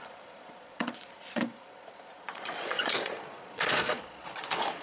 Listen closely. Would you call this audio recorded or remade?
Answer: remade